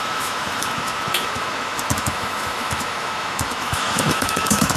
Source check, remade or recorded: remade